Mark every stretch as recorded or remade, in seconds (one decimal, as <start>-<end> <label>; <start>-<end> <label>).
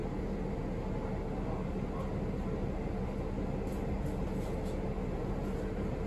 0.0-6.1 recorded